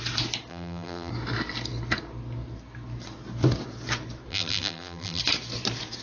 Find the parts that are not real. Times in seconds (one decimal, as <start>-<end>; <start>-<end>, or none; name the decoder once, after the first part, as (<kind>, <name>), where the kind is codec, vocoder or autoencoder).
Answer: 0.5-1.1 (vocoder, BigVGAN v2); 4.3-5.2